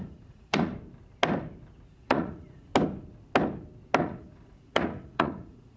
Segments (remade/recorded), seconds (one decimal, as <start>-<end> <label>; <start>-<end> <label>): 0.0-0.7 remade; 0.7-1.9 recorded; 1.9-2.7 remade; 2.7-4.0 recorded; 4.0-5.8 remade